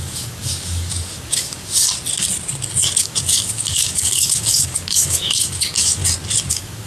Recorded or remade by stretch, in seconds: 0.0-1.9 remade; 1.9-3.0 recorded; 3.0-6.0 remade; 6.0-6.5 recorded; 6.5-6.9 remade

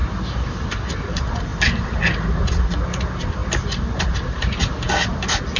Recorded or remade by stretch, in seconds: 0.0-5.6 recorded

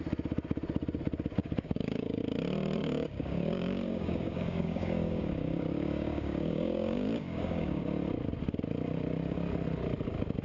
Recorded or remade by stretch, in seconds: 0.0-1.4 recorded; 1.4-2.2 remade; 2.2-2.8 recorded; 2.8-7.8 remade; 7.8-10.4 recorded

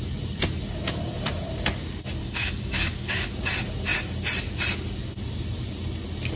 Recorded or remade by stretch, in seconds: 0.0-2.2 recorded; 2.2-3.3 remade; 3.3-6.4 recorded

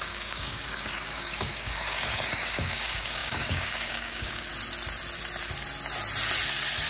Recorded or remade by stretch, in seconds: 0.0-4.5 remade; 4.5-6.9 recorded

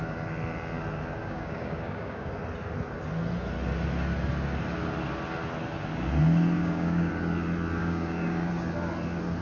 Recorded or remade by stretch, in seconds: 0.0-1.2 recorded; 1.2-2.3 remade; 2.3-6.6 recorded; 6.6-7.1 remade; 7.1-7.8 recorded; 7.8-8.5 remade; 8.5-9.4 recorded